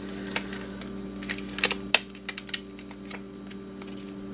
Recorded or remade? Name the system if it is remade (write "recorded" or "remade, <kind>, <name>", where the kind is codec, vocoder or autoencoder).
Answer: recorded